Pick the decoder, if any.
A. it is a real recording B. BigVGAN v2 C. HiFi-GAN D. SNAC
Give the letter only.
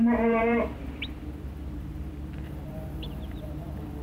B